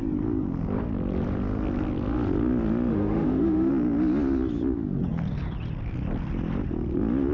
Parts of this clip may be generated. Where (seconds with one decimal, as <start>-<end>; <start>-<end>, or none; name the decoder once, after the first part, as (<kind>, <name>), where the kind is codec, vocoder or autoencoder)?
2.9-3.7 (autoencoder, DAC-VAE)